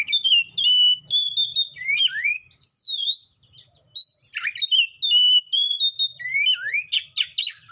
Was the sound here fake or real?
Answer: real